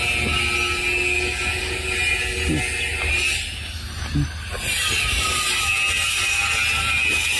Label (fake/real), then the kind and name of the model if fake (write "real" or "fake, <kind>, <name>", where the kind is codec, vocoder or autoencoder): real